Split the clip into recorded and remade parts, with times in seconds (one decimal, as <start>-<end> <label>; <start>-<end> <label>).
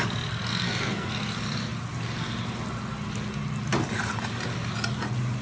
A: 0.0-0.5 recorded; 0.5-1.1 remade; 1.1-5.4 recorded